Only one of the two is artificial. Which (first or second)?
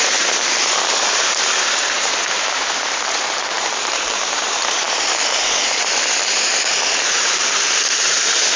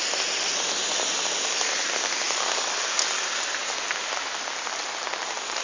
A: first